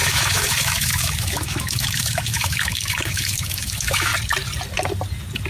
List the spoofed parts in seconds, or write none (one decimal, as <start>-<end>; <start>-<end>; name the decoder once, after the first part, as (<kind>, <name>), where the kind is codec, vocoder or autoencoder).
0.0-4.1 (autoencoder, DAC-VAE)